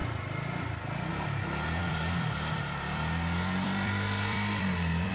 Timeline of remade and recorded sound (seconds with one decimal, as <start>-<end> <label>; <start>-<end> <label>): 0.0-1.8 recorded; 1.8-5.1 remade